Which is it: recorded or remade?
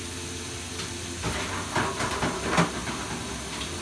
recorded